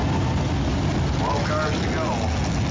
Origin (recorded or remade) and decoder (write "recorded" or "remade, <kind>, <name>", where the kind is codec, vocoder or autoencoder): recorded